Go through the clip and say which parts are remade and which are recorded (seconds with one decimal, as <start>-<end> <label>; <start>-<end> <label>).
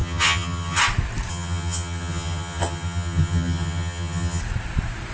0.0-0.8 remade; 0.8-1.3 recorded; 1.3-4.4 remade; 4.4-5.1 recorded